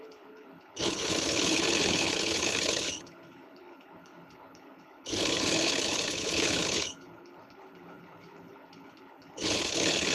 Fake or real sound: fake